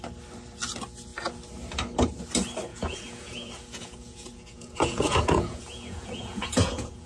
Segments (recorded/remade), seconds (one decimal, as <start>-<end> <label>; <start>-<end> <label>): 0.0-2.7 recorded; 2.7-7.1 remade